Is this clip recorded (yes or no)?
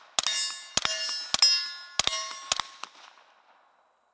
yes